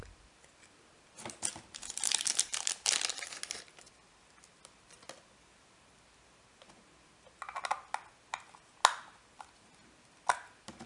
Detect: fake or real real